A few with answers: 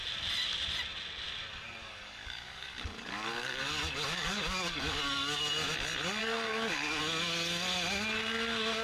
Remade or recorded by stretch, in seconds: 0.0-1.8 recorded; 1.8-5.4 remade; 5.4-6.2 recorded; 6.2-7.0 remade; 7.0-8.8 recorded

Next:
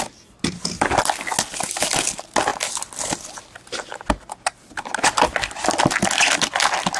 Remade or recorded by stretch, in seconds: 0.0-7.0 recorded

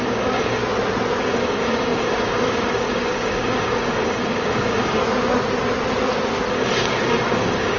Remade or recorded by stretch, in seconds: 0.0-0.6 remade; 0.6-1.2 recorded; 1.2-5.0 remade; 5.0-6.5 recorded; 6.5-7.8 remade

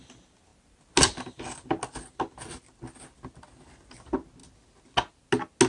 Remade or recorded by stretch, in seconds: 0.0-5.7 recorded